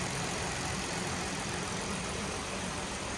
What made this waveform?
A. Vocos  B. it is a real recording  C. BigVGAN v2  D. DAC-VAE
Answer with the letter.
C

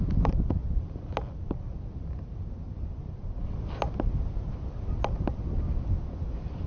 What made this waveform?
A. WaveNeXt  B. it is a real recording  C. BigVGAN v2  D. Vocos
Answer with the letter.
B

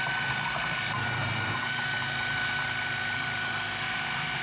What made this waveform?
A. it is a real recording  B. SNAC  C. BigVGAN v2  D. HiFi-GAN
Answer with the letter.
C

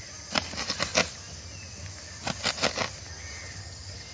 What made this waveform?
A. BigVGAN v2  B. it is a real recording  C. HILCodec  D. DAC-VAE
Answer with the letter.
B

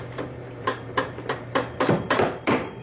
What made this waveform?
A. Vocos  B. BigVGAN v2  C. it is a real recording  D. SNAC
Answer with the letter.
B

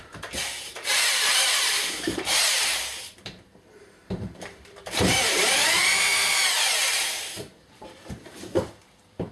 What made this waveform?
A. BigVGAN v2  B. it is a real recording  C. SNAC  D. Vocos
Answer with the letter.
A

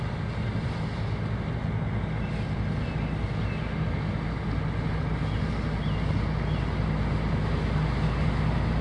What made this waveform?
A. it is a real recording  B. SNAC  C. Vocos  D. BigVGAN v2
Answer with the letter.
A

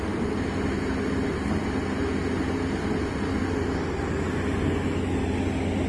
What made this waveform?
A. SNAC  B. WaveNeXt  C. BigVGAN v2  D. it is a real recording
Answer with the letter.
D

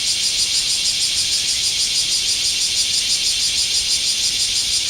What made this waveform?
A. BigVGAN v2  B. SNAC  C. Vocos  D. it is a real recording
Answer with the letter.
D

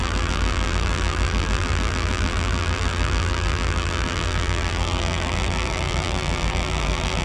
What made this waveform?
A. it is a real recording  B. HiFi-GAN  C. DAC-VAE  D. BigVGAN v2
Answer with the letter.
D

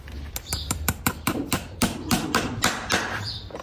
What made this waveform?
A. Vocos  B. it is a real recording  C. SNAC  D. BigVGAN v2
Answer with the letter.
D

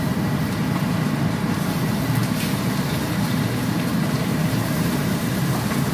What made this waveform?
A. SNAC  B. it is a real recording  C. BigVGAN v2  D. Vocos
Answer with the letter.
C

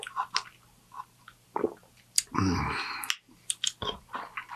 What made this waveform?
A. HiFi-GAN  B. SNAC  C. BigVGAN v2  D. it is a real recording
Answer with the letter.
D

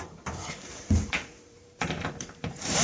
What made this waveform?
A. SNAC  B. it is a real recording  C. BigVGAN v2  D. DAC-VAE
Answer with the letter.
C